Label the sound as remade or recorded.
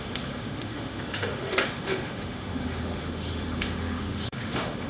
remade